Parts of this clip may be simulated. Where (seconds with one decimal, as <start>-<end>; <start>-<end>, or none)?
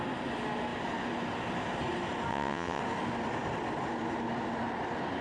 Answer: 2.3-2.8